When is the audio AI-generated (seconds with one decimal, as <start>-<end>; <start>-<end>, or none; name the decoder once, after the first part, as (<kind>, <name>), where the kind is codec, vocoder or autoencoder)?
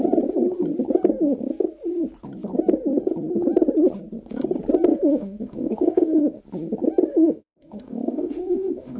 4.9-6.4 (autoencoder, DAC-VAE); 7.1-9.0